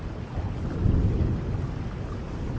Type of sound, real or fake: real